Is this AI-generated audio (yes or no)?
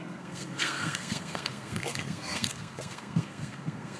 yes